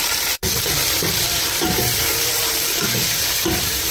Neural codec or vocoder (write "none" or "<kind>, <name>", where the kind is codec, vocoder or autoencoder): vocoder, BigVGAN v2